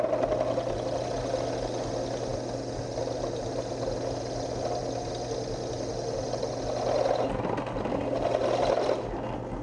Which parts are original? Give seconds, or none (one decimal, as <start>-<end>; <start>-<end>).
0.0-9.6